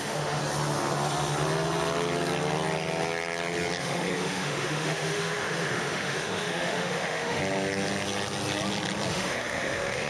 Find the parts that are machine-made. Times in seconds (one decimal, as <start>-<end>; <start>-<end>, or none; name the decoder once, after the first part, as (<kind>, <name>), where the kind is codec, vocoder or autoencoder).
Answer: 0.0-0.4 (autoencoder, DAC-VAE); 3.8-7.4; 9.1-10.1